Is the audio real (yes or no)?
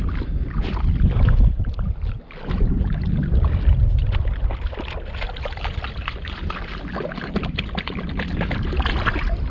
yes